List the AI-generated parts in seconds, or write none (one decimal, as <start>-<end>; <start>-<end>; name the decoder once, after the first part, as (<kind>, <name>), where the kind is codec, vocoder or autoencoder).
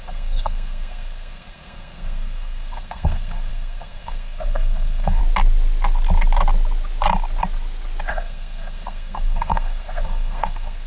0.0-5.2 (codec, SNAC); 8.1-10.9